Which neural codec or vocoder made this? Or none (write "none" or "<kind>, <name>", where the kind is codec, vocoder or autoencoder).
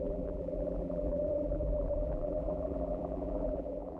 vocoder, BigVGAN v2